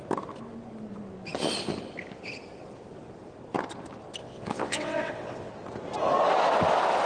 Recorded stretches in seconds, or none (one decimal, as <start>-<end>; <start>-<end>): 0.0-4.2; 5.5-7.1